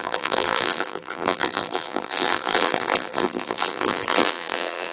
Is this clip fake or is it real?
fake